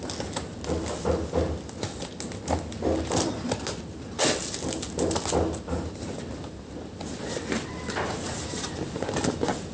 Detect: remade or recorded recorded